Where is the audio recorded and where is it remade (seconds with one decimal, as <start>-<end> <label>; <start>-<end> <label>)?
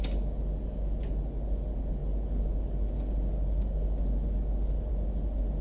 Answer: 0.0-5.6 recorded